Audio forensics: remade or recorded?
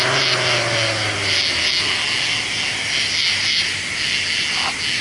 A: recorded